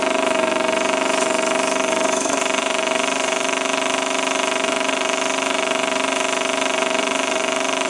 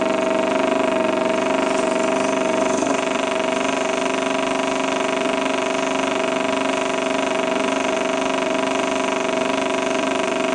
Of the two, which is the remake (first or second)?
first